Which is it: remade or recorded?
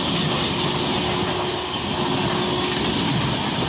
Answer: recorded